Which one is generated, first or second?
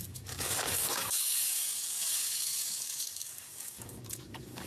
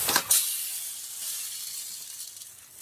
first